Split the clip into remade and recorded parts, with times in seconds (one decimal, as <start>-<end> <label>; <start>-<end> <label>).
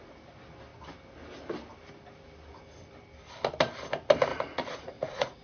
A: 0.0-4.3 recorded; 4.3-5.4 remade